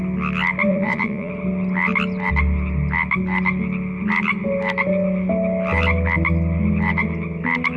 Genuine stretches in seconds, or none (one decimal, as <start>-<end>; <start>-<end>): 0.0-0.7; 1.3-7.8